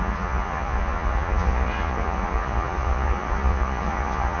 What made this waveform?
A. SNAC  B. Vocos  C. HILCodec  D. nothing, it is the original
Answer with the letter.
B